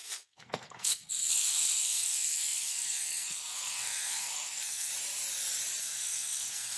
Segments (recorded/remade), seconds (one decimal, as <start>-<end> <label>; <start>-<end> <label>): 0.0-4.9 remade; 4.9-5.8 recorded; 5.8-6.8 remade

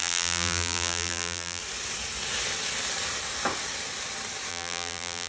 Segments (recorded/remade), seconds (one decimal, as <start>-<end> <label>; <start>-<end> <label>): 0.0-1.6 remade; 1.6-4.5 recorded; 4.5-5.3 remade

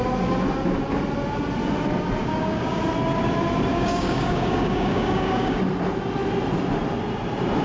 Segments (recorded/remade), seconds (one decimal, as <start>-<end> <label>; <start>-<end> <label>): 0.0-2.2 recorded; 2.2-2.8 remade; 2.8-3.7 recorded; 3.7-5.6 remade; 5.6-7.6 recorded

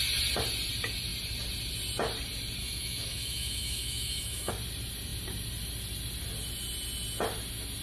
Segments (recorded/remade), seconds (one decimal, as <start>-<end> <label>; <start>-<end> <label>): 0.0-2.6 recorded; 2.6-4.5 remade; 4.5-7.8 recorded

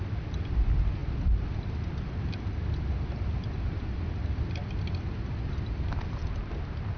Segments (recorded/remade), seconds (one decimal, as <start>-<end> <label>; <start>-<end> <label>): 0.0-7.0 recorded

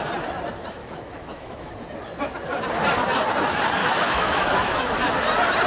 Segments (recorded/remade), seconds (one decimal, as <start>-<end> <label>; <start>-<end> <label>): 0.0-0.8 recorded; 0.8-1.7 remade; 1.7-3.8 recorded; 3.8-5.0 remade; 5.0-5.7 recorded

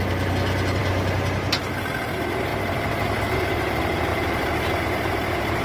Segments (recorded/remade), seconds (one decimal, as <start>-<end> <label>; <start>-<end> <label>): 0.0-4.1 recorded; 4.1-4.8 remade; 4.8-5.6 recorded

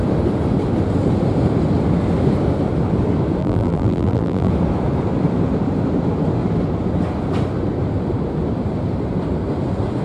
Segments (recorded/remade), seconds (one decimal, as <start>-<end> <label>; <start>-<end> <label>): 0.0-3.4 recorded; 3.4-4.5 remade; 4.5-10.0 recorded